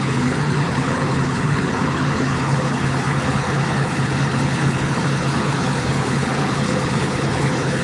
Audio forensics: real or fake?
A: fake